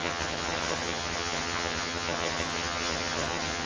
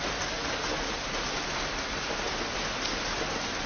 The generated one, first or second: first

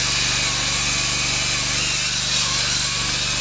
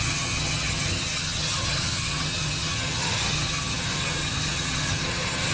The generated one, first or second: second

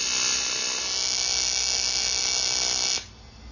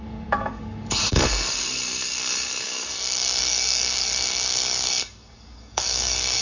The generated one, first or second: second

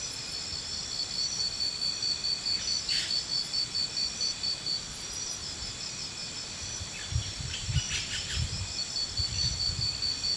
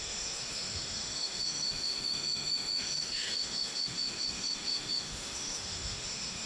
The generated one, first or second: second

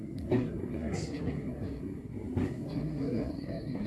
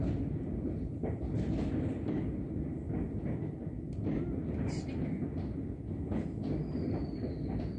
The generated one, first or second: first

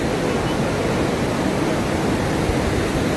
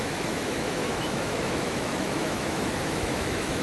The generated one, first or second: second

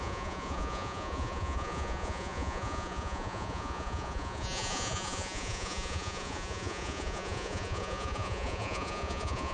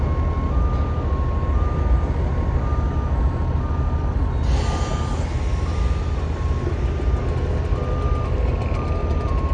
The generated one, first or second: first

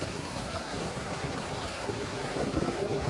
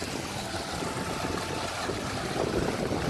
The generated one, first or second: first